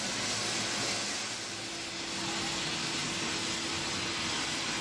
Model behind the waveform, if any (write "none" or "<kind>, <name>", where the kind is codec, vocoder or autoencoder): none